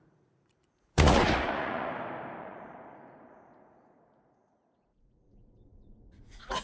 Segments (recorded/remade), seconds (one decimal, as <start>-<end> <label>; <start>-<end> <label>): 0.0-1.9 remade; 1.9-2.4 recorded; 2.4-6.6 remade